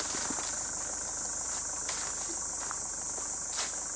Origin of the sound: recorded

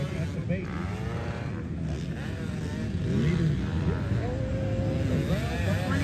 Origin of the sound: recorded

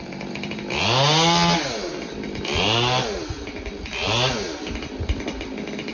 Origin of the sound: recorded